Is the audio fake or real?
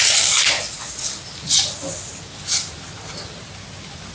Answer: real